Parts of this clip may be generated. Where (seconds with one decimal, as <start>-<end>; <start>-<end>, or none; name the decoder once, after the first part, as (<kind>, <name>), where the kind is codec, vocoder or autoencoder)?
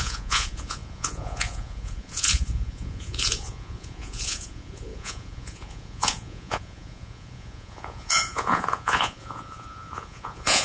0.0-10.6 (vocoder, Vocos)